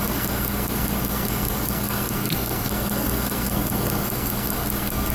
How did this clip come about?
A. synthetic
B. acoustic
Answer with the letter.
A